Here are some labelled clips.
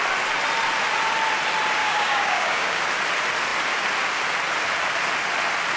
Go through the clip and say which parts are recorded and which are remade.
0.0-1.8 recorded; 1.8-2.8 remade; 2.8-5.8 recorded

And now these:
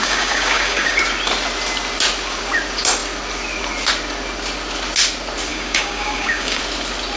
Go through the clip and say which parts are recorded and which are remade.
0.0-1.0 remade; 1.0-5.5 recorded; 5.5-6.6 remade; 6.6-7.2 recorded

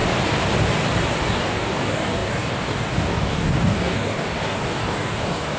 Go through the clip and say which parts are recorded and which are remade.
0.0-1.3 recorded; 1.3-5.6 remade

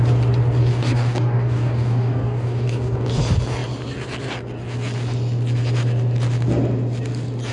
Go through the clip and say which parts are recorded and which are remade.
0.0-0.6 recorded; 0.6-3.2 remade; 3.2-7.5 recorded

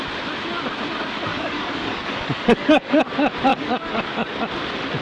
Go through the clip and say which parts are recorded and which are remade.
0.0-1.3 recorded; 1.3-3.0 remade; 3.0-3.5 recorded; 3.5-4.4 remade; 4.4-5.0 recorded

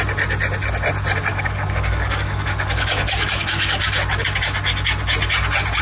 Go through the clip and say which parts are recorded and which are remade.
0.0-1.3 recorded; 1.3-3.8 remade; 3.8-5.8 recorded

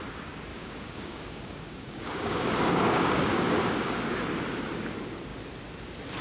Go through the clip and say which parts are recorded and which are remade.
0.0-0.5 recorded; 0.5-4.2 remade; 4.2-6.2 recorded